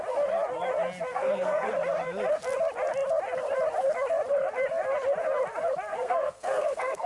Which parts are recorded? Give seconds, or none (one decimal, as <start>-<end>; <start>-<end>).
0.0-1.1; 1.7-5.9